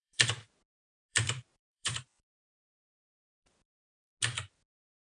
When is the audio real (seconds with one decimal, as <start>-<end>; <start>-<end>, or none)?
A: 0.6-1.1; 4.1-5.1